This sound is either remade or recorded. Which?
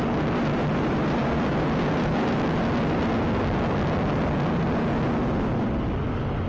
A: recorded